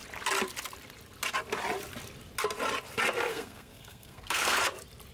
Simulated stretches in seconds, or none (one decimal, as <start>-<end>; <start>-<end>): 3.3-4.6